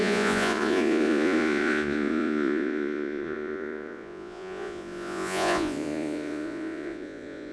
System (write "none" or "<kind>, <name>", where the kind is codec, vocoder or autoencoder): vocoder, Vocos